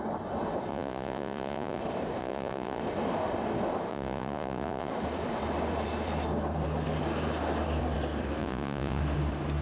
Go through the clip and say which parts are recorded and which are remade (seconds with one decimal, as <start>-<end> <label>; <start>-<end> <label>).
0.0-0.7 recorded; 0.7-1.8 remade; 1.8-2.2 recorded; 2.2-2.8 remade; 2.8-3.9 recorded; 3.9-4.9 remade; 4.9-8.4 recorded; 8.4-9.0 remade; 9.0-9.6 recorded